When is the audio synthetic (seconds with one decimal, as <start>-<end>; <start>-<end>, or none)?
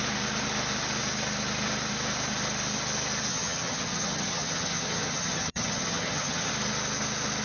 3.3-6.5